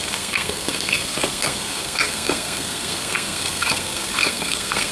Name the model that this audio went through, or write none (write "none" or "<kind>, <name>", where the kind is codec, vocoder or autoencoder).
codec, SNAC